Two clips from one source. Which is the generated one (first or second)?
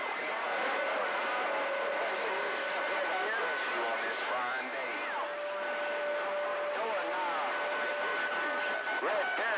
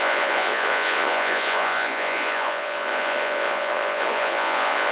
second